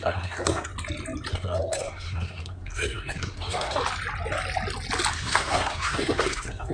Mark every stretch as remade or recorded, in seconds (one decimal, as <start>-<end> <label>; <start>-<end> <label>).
0.0-0.7 remade; 0.7-1.3 recorded; 1.3-3.8 remade; 3.8-5.1 recorded; 5.1-6.7 remade

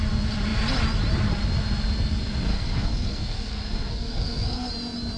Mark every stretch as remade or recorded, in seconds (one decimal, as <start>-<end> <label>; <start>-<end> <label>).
0.0-2.5 recorded; 2.5-4.7 remade; 4.7-5.2 recorded

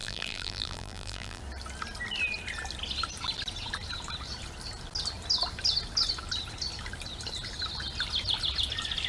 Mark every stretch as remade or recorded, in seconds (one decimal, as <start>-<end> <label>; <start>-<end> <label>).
0.0-1.4 remade; 1.4-9.1 recorded

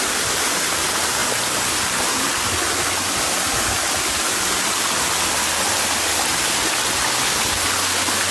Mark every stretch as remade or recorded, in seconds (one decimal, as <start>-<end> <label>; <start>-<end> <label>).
0.0-8.3 recorded